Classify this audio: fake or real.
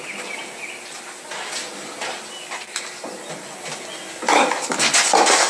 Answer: real